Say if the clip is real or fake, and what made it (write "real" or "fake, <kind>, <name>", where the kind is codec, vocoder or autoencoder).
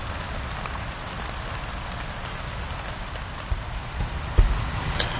real